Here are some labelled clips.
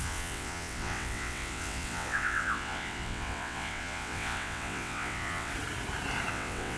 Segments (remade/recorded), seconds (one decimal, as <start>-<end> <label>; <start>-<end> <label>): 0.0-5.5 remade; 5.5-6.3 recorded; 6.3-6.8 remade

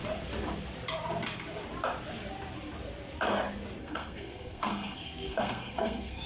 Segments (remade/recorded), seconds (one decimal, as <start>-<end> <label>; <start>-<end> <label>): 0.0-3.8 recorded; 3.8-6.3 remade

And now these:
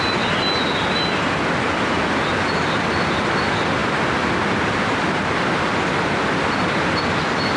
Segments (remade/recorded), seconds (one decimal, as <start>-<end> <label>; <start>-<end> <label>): 0.0-7.6 recorded

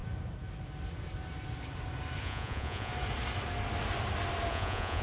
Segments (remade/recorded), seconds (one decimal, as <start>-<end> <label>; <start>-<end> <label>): 0.0-2.2 recorded; 2.2-2.9 remade; 2.9-4.5 recorded; 4.5-5.0 remade

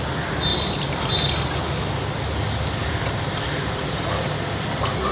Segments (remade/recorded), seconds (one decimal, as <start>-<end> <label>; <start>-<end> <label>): 0.0-0.5 recorded; 0.5-1.1 remade; 1.1-2.8 recorded; 2.8-3.7 remade; 3.7-5.1 recorded

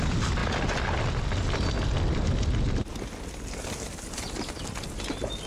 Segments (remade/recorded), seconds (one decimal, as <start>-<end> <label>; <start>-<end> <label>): 0.0-5.5 recorded